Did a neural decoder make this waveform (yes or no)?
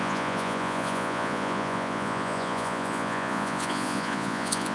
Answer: yes